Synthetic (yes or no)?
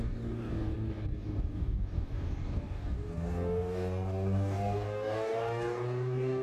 yes